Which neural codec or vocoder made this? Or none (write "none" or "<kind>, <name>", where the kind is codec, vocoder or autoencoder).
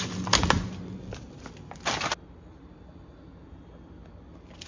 none